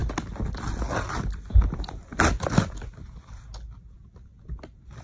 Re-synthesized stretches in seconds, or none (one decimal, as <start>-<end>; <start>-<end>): none